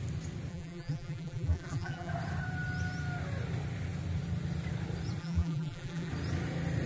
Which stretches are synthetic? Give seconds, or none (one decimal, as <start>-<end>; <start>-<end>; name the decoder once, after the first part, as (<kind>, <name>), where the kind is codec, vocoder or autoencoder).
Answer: 0.5-2.1 (vocoder, BigVGAN v2); 5.2-6.1